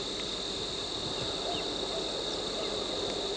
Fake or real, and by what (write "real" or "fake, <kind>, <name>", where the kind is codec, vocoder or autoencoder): real